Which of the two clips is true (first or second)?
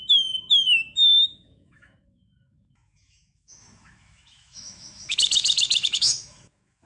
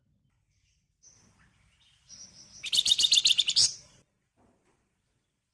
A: second